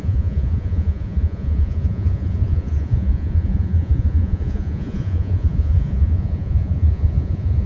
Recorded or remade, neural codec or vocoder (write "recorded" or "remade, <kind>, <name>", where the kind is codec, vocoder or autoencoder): remade, vocoder, Vocos